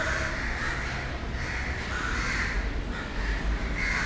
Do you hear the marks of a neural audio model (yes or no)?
no